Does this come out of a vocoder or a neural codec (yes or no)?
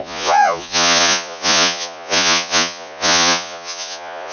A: yes